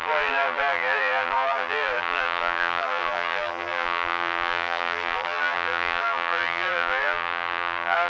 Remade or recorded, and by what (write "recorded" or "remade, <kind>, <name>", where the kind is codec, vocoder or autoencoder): remade, vocoder, BigVGAN v2